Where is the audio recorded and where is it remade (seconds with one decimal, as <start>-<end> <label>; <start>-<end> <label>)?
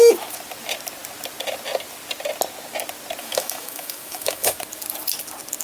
0.0-3.2 recorded; 3.2-4.5 remade; 4.5-5.6 recorded